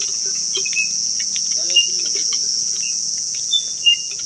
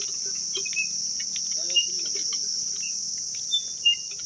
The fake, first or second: first